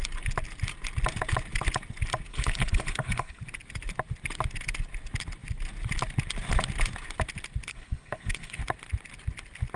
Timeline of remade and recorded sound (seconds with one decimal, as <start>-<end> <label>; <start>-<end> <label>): 0.0-2.3 recorded; 2.3-3.4 remade; 3.4-7.7 recorded; 7.7-8.6 remade; 8.6-9.8 recorded